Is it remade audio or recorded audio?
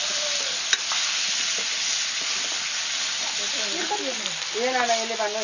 recorded